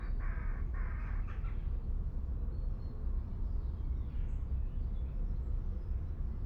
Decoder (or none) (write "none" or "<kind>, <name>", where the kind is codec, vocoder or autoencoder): none